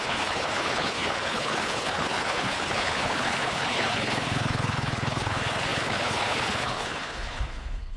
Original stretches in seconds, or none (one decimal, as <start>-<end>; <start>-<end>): none